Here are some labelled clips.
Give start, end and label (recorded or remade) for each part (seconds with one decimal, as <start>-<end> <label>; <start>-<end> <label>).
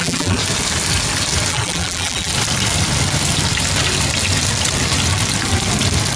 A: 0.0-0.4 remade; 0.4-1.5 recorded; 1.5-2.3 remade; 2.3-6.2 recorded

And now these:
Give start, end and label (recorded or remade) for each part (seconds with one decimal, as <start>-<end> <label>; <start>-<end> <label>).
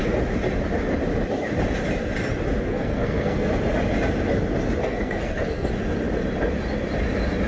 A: 0.0-2.7 recorded; 2.7-3.5 remade; 3.5-4.8 recorded; 4.8-5.7 remade; 5.7-7.5 recorded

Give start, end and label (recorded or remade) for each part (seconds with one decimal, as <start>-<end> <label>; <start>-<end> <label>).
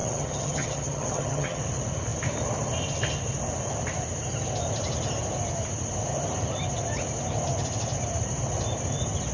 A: 0.0-1.6 remade; 1.6-9.3 recorded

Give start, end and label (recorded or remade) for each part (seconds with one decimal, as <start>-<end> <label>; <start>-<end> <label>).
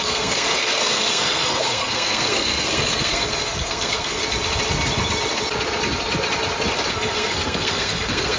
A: 0.0-4.2 remade; 4.2-6.9 recorded; 6.9-8.4 remade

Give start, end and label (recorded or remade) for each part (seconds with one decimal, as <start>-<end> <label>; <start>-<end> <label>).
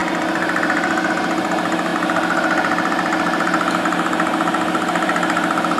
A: 0.0-1.1 remade; 1.1-5.8 recorded